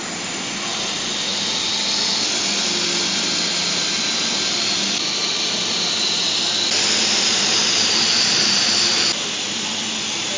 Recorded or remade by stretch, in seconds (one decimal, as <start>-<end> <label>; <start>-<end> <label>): 0.0-10.4 recorded